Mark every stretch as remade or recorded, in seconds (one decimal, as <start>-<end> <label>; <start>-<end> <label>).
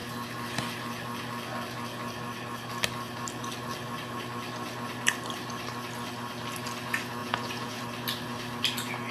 0.0-7.2 recorded; 7.2-7.8 remade; 7.8-9.1 recorded